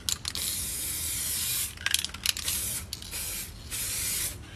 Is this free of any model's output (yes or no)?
yes